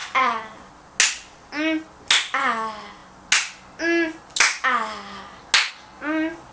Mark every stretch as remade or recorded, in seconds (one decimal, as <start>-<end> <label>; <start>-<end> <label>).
0.0-0.7 remade; 0.7-6.5 recorded